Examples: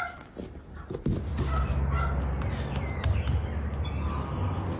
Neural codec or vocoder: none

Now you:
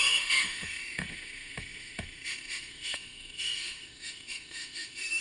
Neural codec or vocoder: autoencoder, DAC-VAE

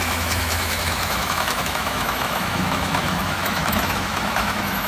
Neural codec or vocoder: autoencoder, DAC-VAE